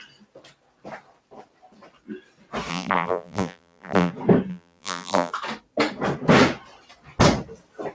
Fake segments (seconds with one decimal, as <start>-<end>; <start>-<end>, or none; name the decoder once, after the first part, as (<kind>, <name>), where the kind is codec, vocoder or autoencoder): 2.7-4.1 (vocoder, BigVGAN v2); 4.5-5.3